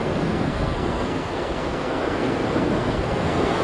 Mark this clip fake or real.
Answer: fake